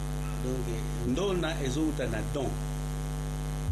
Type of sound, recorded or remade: recorded